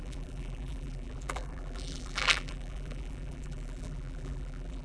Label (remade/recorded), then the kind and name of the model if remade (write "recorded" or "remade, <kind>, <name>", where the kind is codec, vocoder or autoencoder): remade, vocoder, BigVGAN v2